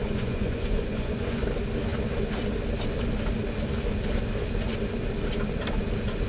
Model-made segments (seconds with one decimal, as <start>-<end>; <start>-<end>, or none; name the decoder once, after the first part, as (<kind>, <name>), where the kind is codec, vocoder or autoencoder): 0.0-1.4 (vocoder, Vocos)